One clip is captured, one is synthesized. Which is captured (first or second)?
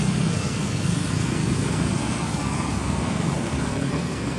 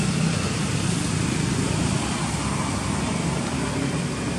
second